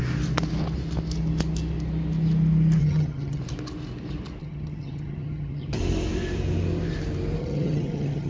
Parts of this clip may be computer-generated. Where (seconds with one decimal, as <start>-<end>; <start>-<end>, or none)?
2.8-3.4; 4.4-5.8; 7.4-8.3